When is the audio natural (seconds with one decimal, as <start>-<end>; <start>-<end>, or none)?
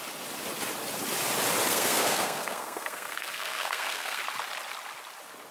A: 0.0-1.7; 4.2-5.5